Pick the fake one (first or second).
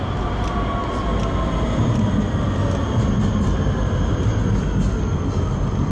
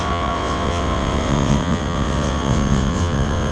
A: second